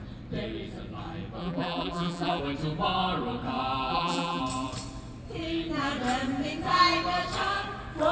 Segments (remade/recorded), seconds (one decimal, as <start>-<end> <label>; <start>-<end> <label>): 0.0-1.4 recorded; 1.4-2.4 remade; 2.4-3.9 recorded; 3.9-4.4 remade; 4.4-8.1 recorded